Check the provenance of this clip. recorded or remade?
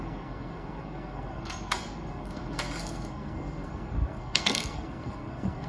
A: remade